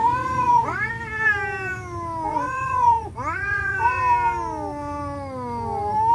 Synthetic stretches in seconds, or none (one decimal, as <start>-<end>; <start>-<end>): 0.0-0.9; 2.3-4.0